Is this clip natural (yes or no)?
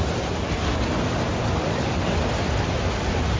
yes